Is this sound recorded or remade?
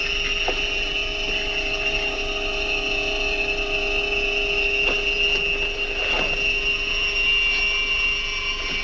recorded